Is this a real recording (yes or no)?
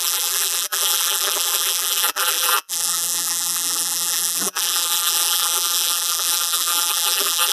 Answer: no